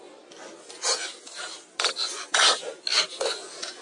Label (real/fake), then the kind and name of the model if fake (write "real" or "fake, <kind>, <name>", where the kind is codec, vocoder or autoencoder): real